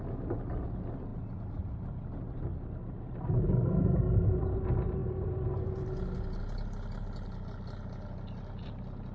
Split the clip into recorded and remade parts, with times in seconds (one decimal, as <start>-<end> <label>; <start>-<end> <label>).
0.0-9.1 recorded